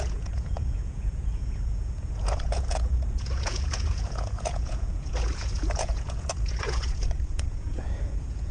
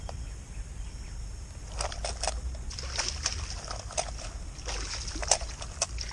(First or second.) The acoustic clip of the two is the second